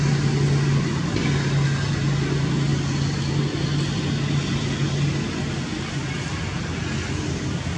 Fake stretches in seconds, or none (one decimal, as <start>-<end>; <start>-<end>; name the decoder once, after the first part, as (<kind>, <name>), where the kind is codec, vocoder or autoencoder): none